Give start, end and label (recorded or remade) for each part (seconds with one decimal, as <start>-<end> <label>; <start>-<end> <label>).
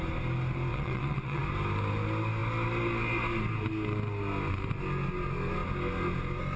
0.0-0.7 recorded; 0.7-1.4 remade; 1.4-6.6 recorded